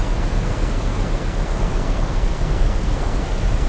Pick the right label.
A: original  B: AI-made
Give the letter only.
B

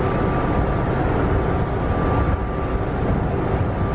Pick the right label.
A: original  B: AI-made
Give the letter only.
A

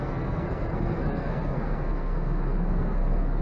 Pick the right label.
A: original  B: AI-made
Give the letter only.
B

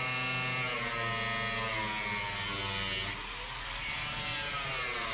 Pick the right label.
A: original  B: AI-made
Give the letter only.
A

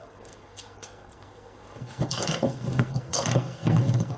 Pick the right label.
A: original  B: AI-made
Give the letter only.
B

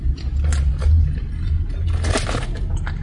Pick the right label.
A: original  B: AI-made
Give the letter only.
A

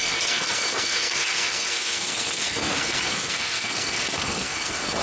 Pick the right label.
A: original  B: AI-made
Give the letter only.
B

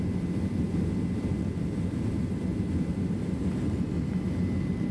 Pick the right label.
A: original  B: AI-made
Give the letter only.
A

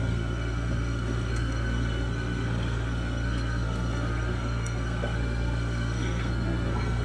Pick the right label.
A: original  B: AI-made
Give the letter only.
B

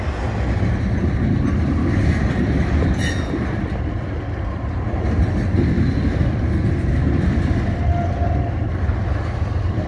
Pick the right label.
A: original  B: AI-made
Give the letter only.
A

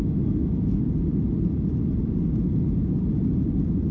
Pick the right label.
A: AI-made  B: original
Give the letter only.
B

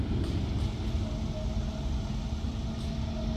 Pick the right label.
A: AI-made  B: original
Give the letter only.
B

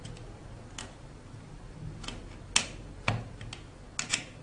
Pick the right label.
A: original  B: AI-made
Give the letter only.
A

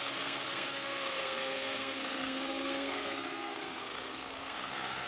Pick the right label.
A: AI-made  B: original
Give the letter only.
A